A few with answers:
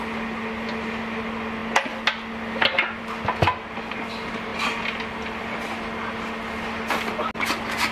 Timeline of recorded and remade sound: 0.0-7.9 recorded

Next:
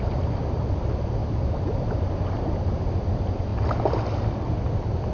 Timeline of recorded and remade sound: 0.0-5.1 recorded

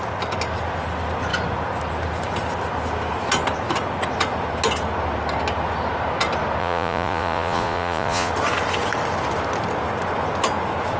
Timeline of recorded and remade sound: 0.0-6.6 recorded; 6.6-8.3 remade; 8.3-11.0 recorded

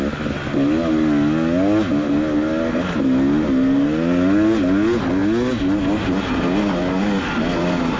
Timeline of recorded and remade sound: 0.0-8.0 recorded

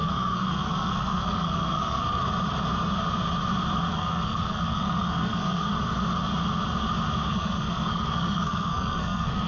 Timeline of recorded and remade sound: 0.0-2.2 remade; 2.2-3.9 recorded; 3.9-5.7 remade; 5.7-7.3 recorded; 7.3-9.5 remade

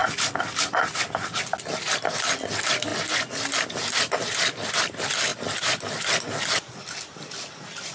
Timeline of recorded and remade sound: 0.0-7.9 recorded

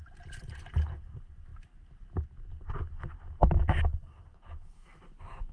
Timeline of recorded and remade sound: 0.0-4.3 recorded; 4.3-5.0 remade; 5.0-5.5 recorded

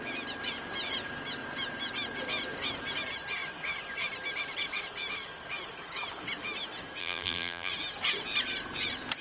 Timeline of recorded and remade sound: 0.0-7.0 recorded; 7.0-7.7 remade; 7.7-9.2 recorded